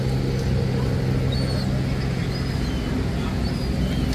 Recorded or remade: recorded